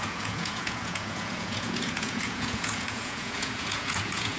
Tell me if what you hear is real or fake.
fake